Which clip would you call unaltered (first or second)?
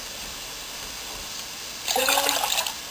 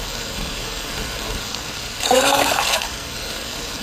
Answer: first